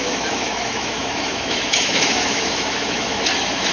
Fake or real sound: fake